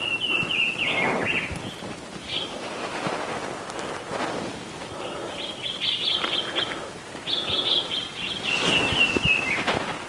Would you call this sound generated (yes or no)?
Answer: no